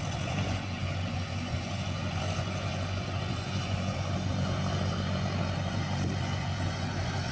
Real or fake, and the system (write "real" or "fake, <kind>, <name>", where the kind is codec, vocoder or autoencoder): fake, vocoder, Vocos